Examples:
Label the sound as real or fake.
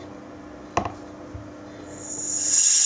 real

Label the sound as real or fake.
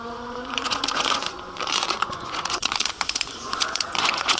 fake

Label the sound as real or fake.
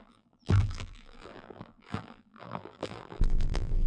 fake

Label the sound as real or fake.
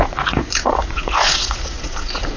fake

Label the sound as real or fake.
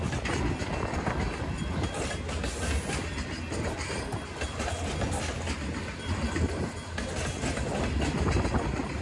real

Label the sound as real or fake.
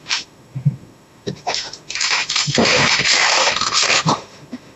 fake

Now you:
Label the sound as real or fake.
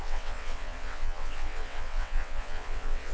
fake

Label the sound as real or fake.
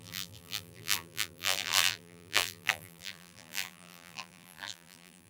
fake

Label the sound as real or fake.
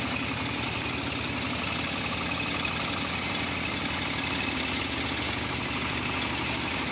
real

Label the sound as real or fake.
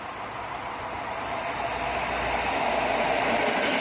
real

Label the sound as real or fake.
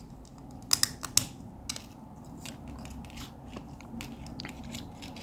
real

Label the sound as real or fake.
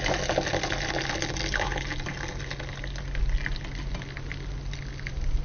real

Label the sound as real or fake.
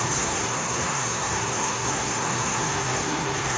fake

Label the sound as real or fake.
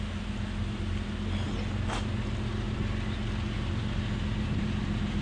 real